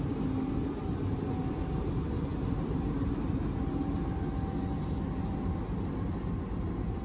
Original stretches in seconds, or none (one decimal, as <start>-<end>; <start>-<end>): 0.0-7.0